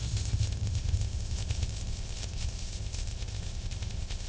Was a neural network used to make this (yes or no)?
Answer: yes